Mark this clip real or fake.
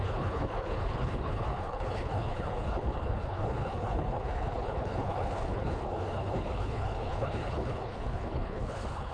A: fake